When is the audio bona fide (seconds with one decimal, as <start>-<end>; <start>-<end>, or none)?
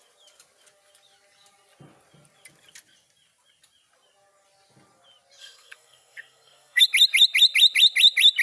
0.0-5.4; 6.8-8.4